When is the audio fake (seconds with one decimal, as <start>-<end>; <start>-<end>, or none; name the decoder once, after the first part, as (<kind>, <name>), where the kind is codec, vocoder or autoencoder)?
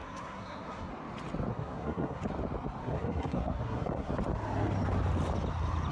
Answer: 0.0-0.9 (codec, SNAC); 1.5-2.2; 2.8-4.1